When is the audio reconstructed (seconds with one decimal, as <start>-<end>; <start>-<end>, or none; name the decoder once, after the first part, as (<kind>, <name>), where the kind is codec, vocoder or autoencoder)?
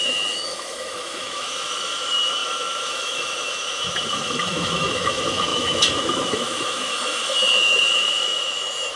0.0-9.0 (autoencoder, DAC-VAE)